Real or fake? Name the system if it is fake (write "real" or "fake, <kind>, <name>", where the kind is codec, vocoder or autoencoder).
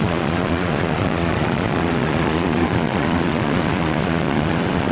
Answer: fake, vocoder, Vocos